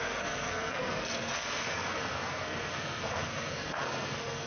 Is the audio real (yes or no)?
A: no